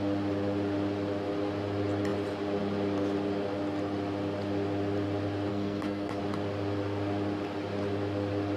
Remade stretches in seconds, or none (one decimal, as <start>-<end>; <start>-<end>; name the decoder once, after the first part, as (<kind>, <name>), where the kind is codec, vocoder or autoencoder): 5.5-6.2 (codec, SNAC)